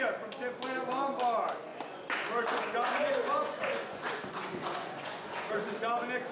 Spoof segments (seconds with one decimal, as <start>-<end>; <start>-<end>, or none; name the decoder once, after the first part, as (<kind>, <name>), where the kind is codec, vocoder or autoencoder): 1.7-5.5 (vocoder, Vocos)